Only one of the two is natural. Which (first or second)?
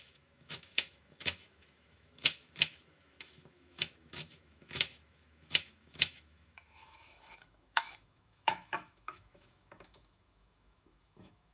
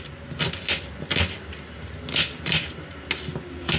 second